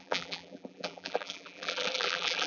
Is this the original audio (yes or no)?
no